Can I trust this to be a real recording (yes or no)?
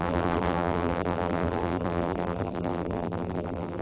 no